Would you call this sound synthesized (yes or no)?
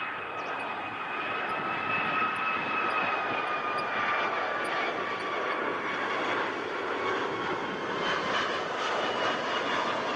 no